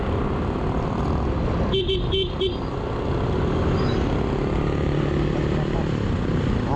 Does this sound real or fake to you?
real